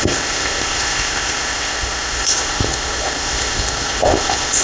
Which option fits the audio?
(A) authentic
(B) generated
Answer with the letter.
B